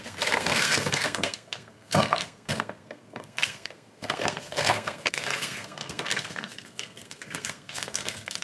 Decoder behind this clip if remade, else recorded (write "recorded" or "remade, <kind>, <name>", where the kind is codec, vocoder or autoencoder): remade, codec, SNAC